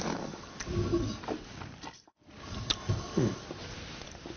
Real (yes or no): yes